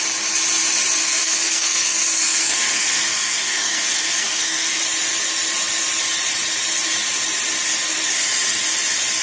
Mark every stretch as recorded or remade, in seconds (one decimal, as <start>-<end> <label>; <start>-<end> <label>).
0.0-1.0 recorded; 1.0-4.8 remade; 4.8-9.2 recorded